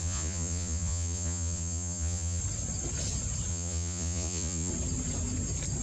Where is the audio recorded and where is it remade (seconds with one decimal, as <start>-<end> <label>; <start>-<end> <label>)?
0.0-2.4 remade; 2.4-3.5 recorded; 3.5-4.7 remade; 4.7-5.8 recorded